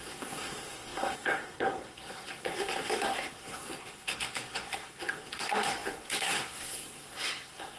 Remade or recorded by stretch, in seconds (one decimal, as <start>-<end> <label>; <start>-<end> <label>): 0.0-7.8 remade